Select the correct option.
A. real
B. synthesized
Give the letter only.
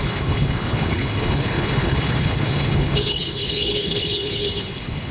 B